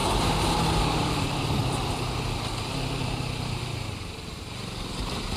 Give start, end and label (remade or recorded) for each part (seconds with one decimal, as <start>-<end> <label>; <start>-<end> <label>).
0.0-0.7 recorded; 0.7-1.6 remade; 1.6-3.0 recorded; 3.0-5.4 remade